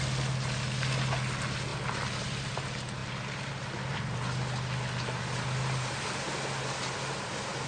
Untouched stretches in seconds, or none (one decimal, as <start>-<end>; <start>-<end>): 0.0-7.7